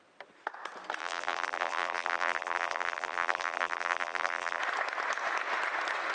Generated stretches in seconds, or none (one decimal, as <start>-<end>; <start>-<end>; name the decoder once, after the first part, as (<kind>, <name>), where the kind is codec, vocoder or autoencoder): 1.0-4.6 (vocoder, BigVGAN v2)